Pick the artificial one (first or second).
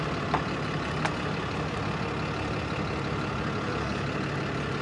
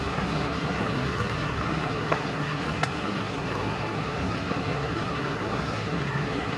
second